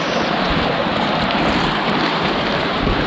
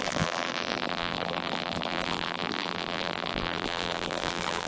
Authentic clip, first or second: first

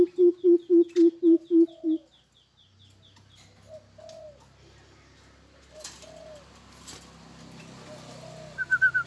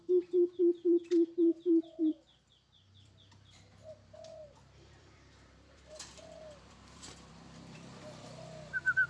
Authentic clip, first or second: first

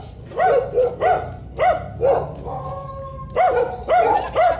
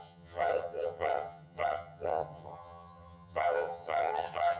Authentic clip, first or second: first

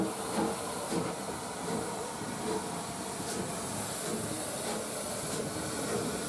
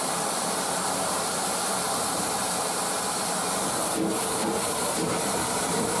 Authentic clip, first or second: first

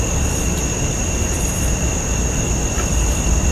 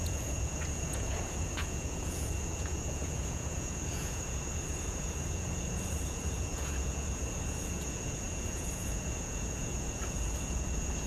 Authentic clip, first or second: first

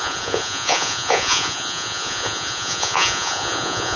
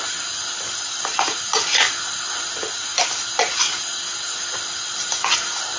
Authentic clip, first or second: second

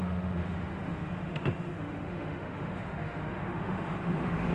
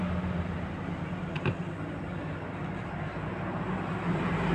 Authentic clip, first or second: second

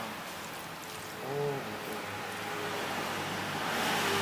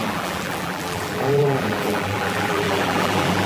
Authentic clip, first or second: first